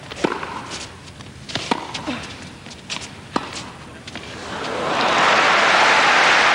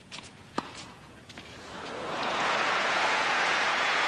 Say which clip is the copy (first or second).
second